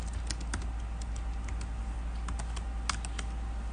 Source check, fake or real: real